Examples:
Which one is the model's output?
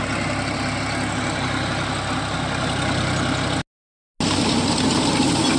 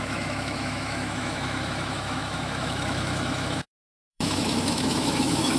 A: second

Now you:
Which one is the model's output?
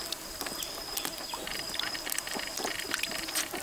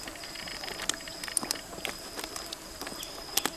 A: first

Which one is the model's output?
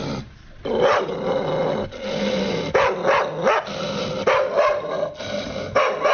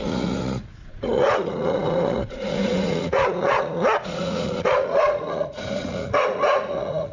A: second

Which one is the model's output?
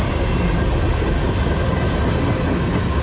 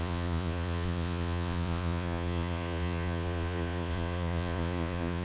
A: second